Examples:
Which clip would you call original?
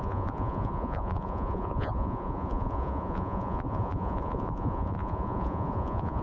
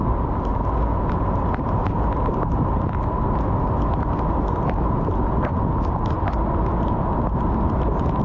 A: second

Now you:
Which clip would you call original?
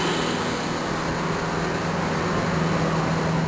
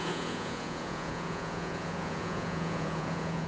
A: first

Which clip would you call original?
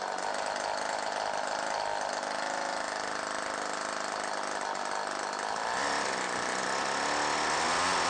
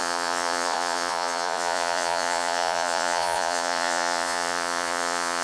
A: first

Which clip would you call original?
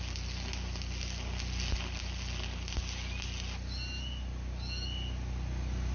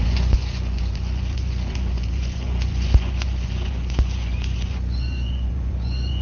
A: first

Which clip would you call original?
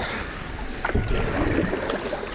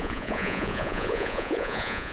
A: first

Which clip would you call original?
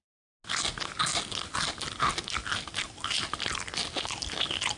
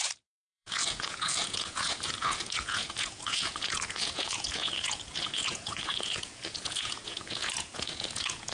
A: first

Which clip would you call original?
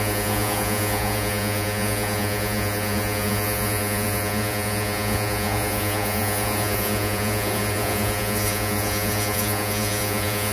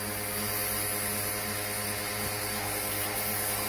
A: second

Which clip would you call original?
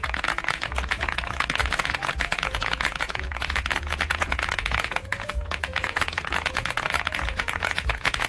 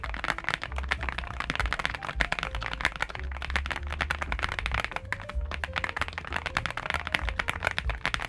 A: second